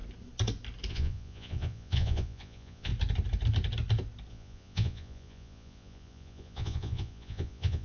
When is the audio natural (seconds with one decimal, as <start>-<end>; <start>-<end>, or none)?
0.0-0.9; 2.9-4.3